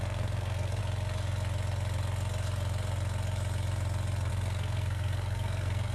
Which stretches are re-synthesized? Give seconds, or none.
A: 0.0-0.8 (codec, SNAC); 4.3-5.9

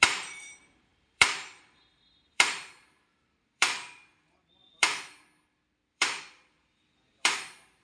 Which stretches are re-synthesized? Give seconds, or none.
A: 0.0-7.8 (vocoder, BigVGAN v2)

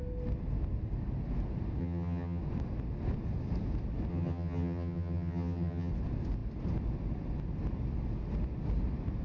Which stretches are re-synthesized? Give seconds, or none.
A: 1.8-2.4 (vocoder, HiFi-GAN); 4.1-5.9